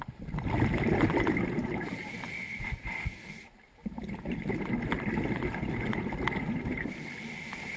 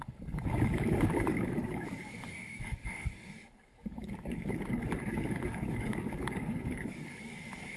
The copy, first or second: second